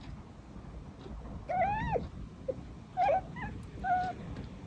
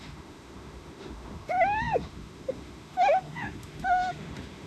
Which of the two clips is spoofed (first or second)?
second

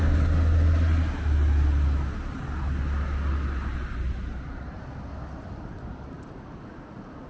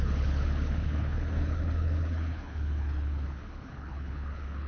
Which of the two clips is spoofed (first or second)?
second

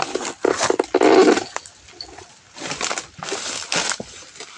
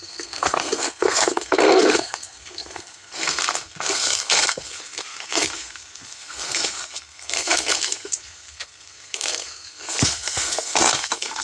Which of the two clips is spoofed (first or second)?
second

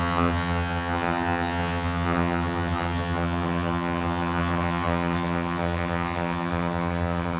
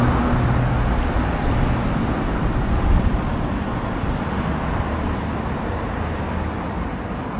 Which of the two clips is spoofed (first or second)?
first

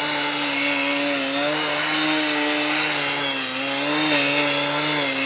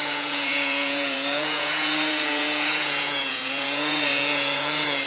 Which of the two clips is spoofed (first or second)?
second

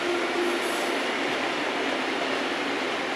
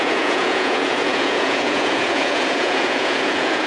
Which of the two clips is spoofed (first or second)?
second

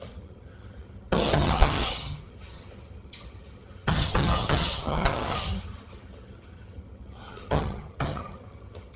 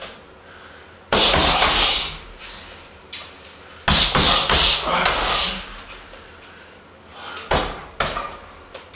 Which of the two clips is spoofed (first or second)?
first